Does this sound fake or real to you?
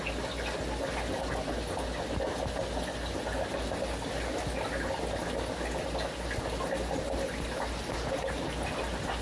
real